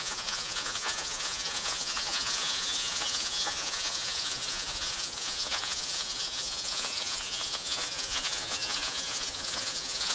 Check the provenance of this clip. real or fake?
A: fake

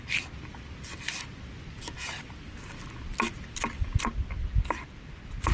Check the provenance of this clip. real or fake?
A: real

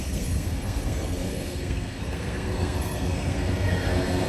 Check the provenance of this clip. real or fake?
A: fake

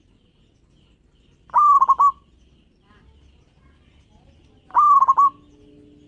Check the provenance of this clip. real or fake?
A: real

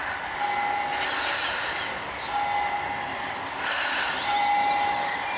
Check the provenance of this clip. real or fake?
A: real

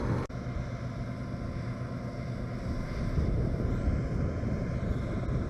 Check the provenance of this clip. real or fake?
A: real